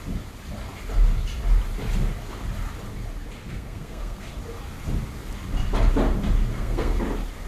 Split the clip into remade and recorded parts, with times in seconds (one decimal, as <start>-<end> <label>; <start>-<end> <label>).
0.0-3.5 recorded; 3.5-4.3 remade; 4.3-6.5 recorded; 6.5-7.0 remade; 7.0-7.5 recorded